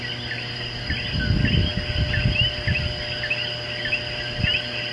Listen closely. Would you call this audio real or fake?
real